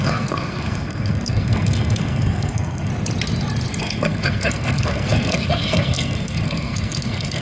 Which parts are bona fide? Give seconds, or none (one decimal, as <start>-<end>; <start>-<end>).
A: 2.9-3.8